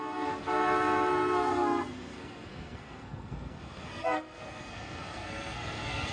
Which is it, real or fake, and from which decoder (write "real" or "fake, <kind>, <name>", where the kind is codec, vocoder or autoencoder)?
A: fake, codec, SNAC